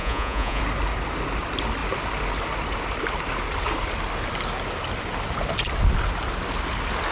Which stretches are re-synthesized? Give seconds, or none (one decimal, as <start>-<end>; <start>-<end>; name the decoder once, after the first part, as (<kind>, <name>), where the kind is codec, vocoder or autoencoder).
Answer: 0.0-0.6 (vocoder, Vocos)